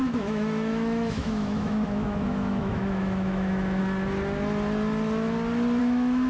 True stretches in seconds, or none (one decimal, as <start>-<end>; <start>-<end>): 3.8-5.8